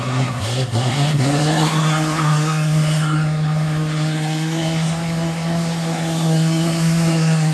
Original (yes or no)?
no